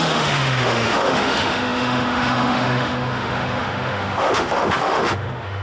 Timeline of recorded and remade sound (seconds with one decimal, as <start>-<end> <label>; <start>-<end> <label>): 0.0-5.6 remade